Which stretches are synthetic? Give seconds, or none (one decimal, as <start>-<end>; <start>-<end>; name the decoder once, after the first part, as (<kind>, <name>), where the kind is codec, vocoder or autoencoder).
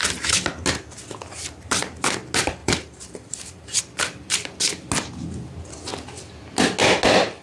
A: 2.6-3.8 (vocoder, BigVGAN v2)